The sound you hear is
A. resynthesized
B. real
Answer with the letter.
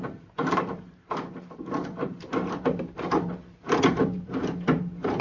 A